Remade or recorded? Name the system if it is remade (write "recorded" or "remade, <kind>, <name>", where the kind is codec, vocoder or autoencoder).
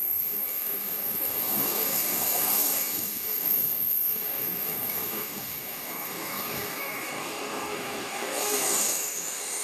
remade, codec, DAC